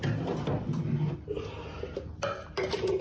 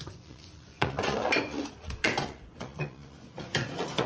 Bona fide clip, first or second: first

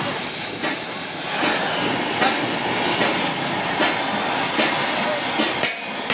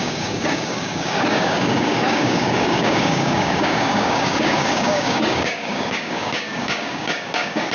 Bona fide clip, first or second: first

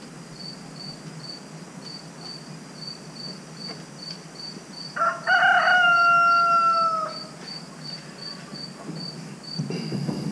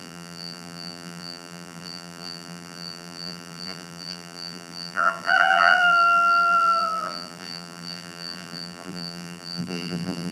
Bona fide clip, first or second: first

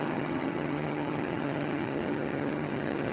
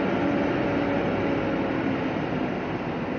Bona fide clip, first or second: second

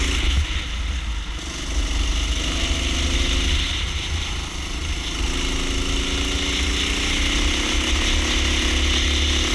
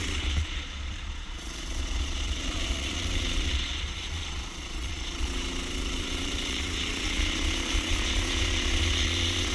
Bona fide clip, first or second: first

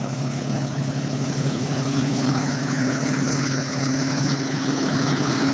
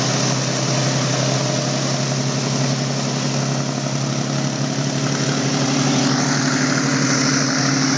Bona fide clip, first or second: second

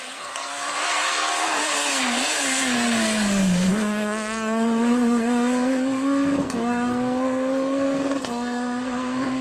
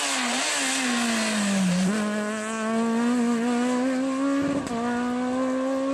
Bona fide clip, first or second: second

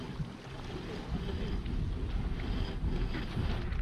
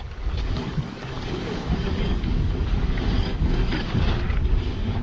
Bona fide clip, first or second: first